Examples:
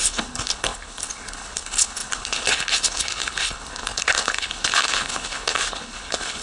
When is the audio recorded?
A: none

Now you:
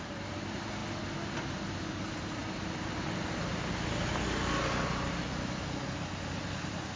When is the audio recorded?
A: 0.8-1.4; 2.4-6.3

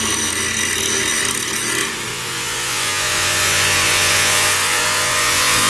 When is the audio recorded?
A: 0.0-2.1

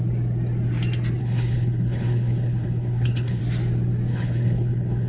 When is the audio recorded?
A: 0.0-1.2; 3.4-4.1

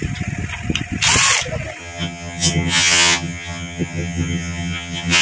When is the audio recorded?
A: 0.0-1.8